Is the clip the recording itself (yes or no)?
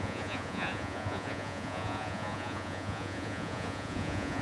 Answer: no